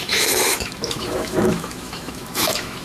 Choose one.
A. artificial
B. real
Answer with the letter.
A